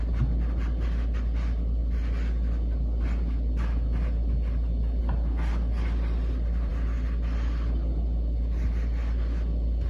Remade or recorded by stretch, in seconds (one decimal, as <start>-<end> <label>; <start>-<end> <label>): 0.0-9.9 recorded